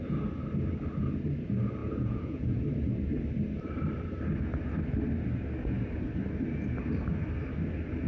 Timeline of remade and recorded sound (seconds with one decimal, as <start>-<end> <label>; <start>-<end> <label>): 0.0-1.8 recorded; 1.8-2.6 remade; 2.6-8.1 recorded

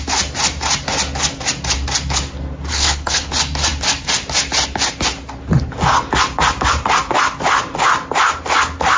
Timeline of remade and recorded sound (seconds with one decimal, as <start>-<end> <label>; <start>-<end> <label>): 0.0-2.7 recorded; 2.7-3.3 remade; 3.3-9.0 recorded

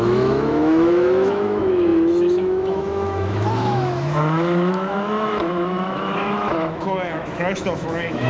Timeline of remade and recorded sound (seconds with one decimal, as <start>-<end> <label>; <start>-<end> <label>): 0.0-8.3 remade